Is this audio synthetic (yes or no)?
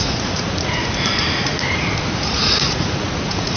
yes